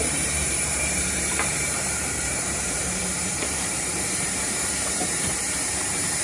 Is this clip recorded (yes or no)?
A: no